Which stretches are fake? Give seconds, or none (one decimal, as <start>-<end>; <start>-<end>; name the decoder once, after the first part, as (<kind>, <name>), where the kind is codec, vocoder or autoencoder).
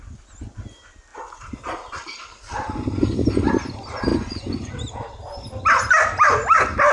4.1-4.7 (vocoder, Vocos)